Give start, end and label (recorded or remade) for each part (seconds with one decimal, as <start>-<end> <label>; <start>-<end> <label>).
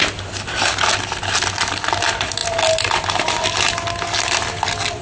0.0-5.0 recorded